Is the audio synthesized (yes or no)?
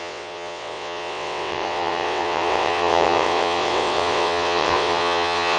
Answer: yes